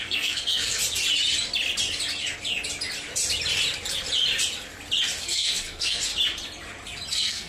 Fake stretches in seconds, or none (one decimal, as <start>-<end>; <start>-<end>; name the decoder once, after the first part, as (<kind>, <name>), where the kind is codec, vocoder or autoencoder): 0.0-0.8 (codec, SNAC); 5.2-6.0; 7.1-7.5